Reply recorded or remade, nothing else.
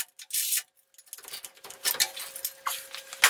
recorded